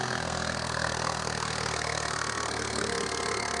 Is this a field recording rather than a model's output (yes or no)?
no